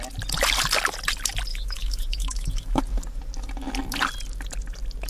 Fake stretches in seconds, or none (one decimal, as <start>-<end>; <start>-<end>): 1.5-2.8